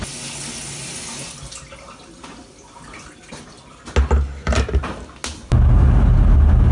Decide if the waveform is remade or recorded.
recorded